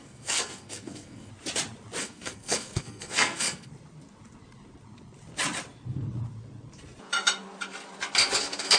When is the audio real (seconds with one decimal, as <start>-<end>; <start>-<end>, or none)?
1.3-2.0; 3.7-8.4